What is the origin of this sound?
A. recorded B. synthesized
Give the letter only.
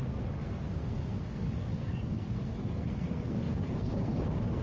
B